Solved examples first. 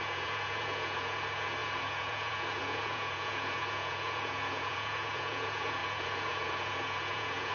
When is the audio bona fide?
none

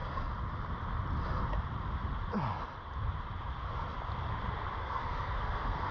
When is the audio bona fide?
0.0-4.8

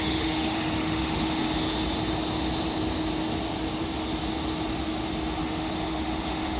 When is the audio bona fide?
1.4-5.4

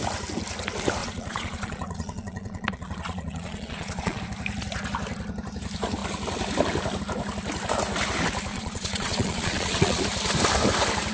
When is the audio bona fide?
0.0-1.0; 4.2-8.5; 10.0-11.1

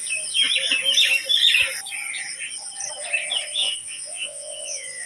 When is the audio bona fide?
0.0-3.6

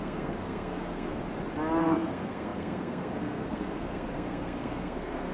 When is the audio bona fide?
1.2-1.8